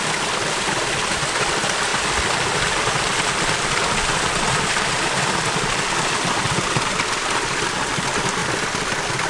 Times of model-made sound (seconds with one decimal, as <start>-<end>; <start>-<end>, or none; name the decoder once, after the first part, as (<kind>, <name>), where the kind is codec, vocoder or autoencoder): 1.9-6.7 (vocoder, BigVGAN v2)